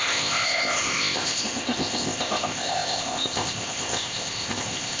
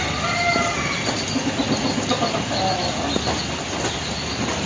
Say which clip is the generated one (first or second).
first